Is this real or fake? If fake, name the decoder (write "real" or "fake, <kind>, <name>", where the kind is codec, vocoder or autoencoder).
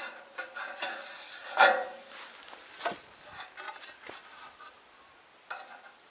real